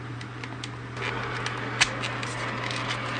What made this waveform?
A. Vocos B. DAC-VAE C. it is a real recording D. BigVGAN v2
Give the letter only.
C